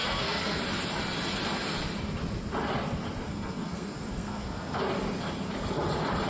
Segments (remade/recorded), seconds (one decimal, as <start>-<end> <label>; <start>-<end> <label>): 0.0-0.6 remade; 0.6-3.3 recorded; 3.3-4.8 remade; 4.8-6.3 recorded